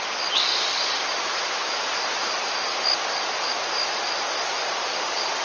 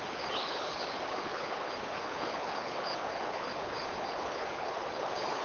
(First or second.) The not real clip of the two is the second